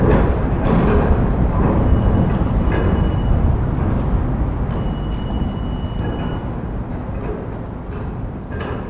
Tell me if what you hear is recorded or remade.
recorded